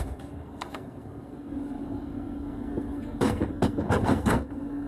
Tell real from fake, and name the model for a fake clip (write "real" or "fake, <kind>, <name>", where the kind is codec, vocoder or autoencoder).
fake, codec, SNAC